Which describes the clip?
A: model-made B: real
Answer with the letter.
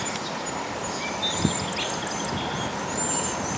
B